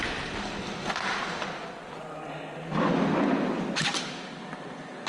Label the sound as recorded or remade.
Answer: recorded